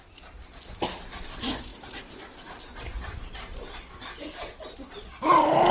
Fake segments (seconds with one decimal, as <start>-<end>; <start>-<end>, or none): 1.7-2.6